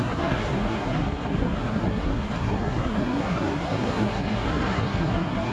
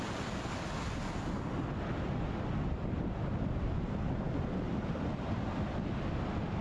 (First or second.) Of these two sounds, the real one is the second